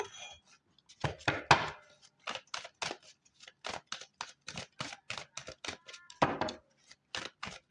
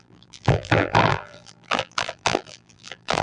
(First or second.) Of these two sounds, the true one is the first